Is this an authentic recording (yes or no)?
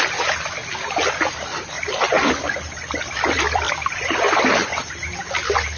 yes